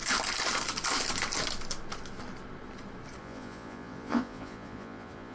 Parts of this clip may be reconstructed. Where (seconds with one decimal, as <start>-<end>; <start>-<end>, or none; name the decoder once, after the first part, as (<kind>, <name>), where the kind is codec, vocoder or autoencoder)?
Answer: 3.2-5.3 (vocoder, Vocos)